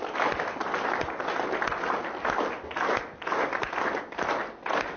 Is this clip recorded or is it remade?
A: recorded